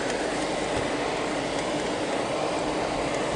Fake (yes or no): no